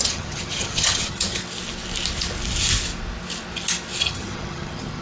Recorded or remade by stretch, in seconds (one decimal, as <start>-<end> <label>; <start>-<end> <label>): 0.0-1.4 remade; 1.4-4.0 recorded; 4.0-5.0 remade